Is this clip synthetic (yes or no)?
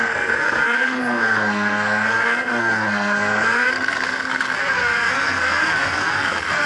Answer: yes